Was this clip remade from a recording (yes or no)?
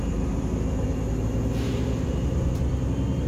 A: no